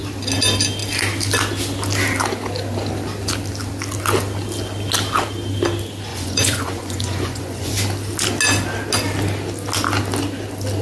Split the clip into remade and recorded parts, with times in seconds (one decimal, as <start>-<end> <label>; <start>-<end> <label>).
0.0-6.1 recorded; 6.1-7.7 remade; 7.7-10.8 recorded